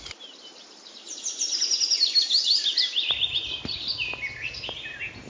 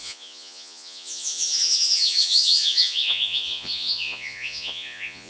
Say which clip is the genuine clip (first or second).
first